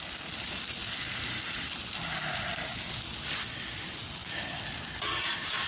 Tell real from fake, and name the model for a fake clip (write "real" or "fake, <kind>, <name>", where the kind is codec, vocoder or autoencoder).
real